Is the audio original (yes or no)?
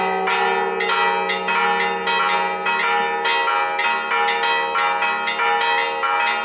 yes